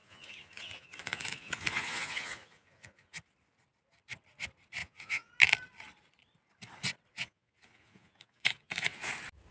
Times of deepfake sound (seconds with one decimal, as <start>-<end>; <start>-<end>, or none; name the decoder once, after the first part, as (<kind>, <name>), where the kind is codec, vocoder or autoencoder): 0.0-3.2 (vocoder, Vocos); 4.8-5.3; 7.1-9.1